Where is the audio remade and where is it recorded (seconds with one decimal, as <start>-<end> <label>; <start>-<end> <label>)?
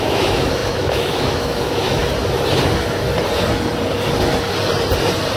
0.0-2.0 remade; 2.0-5.4 recorded